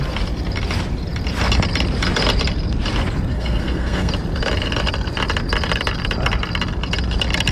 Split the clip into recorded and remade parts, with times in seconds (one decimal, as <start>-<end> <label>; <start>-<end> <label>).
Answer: 0.0-3.3 recorded; 3.3-4.1 remade; 4.1-7.5 recorded